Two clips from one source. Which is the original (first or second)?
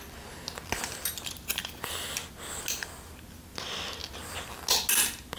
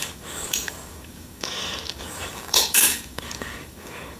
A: first